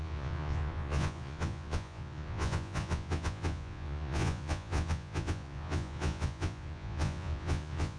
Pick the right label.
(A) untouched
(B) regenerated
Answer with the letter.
B